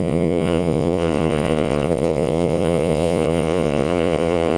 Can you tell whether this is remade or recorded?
remade